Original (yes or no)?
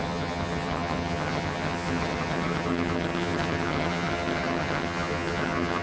no